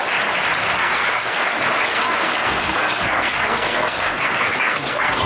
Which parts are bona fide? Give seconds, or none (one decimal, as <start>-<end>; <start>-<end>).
0.0-0.6; 1.5-1.9